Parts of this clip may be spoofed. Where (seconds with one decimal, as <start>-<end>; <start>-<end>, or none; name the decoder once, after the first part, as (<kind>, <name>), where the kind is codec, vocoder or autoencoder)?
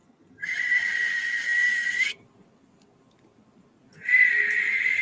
0.0-0.6 (vocoder, HiFi-GAN)